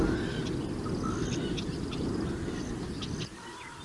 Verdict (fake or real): real